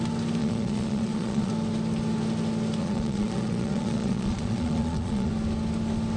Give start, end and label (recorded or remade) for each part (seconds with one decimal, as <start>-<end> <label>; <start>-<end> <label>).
0.0-0.4 recorded; 0.4-1.5 remade; 1.5-2.8 recorded; 2.8-5.3 remade; 5.3-6.2 recorded